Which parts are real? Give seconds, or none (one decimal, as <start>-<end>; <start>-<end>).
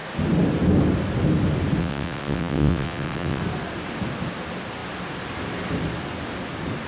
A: 0.0-1.8; 3.4-6.9